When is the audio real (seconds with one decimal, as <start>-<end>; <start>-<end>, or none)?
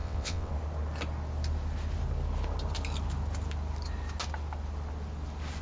0.5-5.6